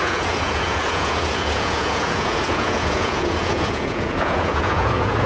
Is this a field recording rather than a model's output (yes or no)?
no